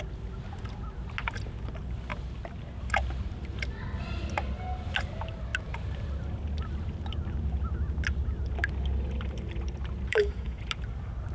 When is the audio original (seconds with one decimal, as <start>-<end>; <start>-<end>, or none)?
0.0-10.1; 10.6-11.3